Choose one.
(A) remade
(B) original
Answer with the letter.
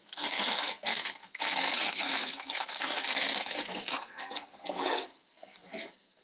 A